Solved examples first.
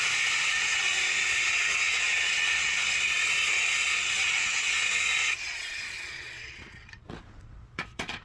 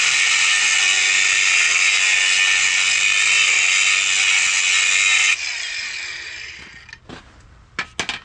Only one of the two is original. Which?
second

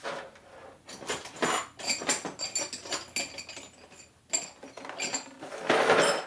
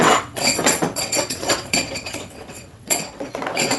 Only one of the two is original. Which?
first